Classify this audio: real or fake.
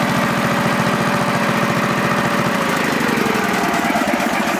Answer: real